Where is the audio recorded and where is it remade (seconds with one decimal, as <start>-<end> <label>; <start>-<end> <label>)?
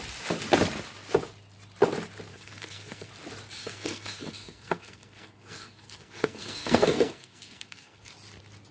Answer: 0.0-2.3 recorded; 2.3-3.1 remade; 3.1-3.6 recorded; 3.6-8.1 remade; 8.1-8.7 recorded